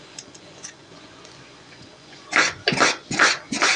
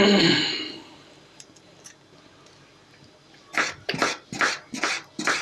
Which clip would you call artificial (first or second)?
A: first